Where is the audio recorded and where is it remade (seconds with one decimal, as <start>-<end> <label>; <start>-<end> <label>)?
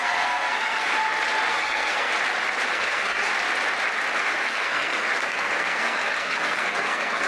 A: 0.0-0.9 remade; 0.9-1.5 recorded; 1.5-2.1 remade; 2.1-2.7 recorded; 2.7-3.3 remade; 3.3-4.2 recorded; 4.2-7.3 remade